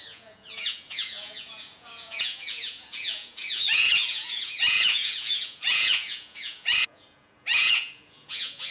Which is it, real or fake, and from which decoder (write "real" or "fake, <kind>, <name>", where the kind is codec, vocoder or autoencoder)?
fake, vocoder, Vocos